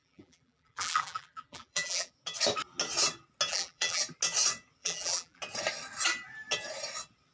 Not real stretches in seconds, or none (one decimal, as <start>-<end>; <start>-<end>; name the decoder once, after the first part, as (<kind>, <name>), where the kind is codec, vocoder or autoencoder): 0.0-2.1 (vocoder, BigVGAN v2); 3.5-4.0; 4.8-5.4